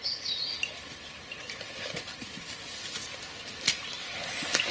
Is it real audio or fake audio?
real